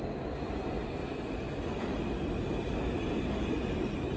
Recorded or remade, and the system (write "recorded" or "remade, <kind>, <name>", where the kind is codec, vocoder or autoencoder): recorded